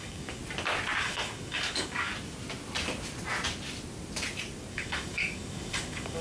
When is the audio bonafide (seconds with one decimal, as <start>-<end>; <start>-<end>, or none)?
0.4-1.0; 2.1-4.7